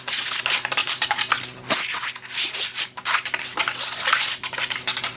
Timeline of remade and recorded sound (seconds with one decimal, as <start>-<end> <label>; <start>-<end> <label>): 0.0-0.8 recorded; 0.8-1.3 remade; 1.3-5.2 recorded